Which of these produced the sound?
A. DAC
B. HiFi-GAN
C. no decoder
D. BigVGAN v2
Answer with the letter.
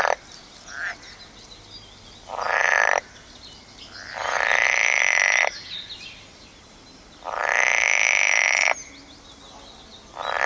C